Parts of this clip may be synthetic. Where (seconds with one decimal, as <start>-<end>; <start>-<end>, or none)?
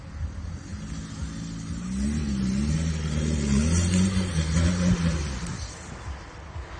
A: 5.5-6.0